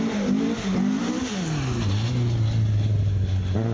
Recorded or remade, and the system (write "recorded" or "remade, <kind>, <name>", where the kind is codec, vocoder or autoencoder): recorded